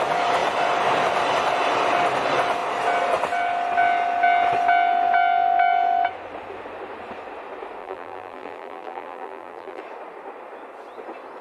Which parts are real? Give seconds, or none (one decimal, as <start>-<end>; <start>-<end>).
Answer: 0.0-7.8; 9.8-11.4